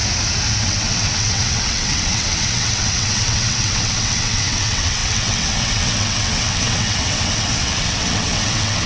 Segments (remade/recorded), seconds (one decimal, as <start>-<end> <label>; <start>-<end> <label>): 0.0-0.6 recorded; 0.6-8.9 remade